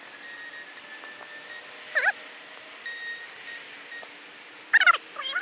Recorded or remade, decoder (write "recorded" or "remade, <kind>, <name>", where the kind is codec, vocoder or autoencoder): recorded